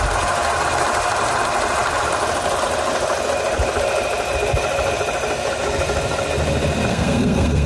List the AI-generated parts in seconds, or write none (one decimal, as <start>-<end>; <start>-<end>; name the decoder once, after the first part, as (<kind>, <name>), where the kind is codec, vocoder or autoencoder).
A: 6.9-7.7 (codec, SNAC)

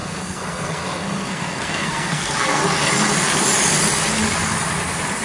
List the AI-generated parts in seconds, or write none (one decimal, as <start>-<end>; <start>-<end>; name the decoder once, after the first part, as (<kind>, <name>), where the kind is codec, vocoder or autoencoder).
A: 0.0-2.6 (codec, SNAC)

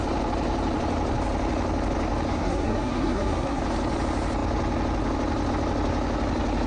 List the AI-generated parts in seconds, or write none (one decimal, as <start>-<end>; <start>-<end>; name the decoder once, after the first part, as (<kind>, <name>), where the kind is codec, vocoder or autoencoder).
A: 2.3-3.6 (codec, SNAC)

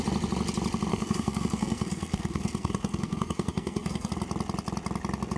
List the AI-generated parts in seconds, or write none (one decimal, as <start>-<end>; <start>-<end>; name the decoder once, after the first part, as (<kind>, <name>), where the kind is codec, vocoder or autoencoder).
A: 0.9-4.1 (codec, SNAC)

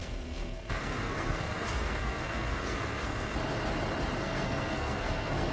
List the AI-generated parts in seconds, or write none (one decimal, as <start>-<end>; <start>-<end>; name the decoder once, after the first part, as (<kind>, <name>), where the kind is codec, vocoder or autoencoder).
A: 0.0-3.3 (codec, SNAC); 4.2-5.5

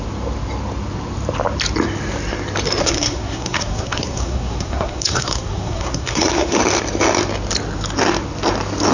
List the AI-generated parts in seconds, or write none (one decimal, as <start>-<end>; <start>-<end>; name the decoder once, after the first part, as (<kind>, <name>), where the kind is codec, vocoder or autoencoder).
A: 2.8-6.6 (codec, SNAC)

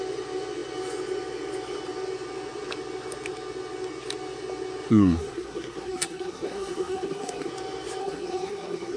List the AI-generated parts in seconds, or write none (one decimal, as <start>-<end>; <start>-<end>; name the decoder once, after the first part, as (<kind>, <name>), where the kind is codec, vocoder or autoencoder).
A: 4.9-7.5 (codec, SNAC); 8.0-9.0